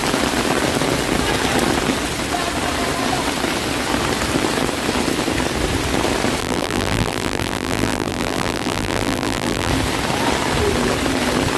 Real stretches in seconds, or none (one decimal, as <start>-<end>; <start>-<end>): 0.0-6.4; 9.7-11.6